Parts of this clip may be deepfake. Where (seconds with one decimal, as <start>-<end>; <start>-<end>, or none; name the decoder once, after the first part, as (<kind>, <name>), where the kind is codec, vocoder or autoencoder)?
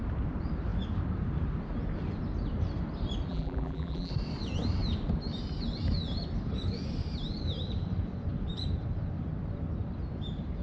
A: 3.3-4.1 (vocoder, BigVGAN v2)